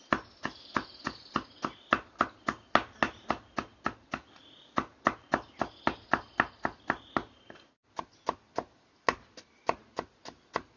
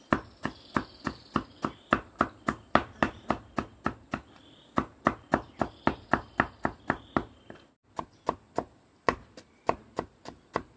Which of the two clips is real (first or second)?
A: first